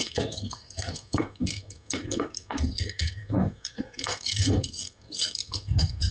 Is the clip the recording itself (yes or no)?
no